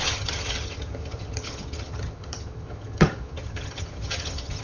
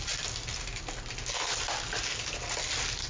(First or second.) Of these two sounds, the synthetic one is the first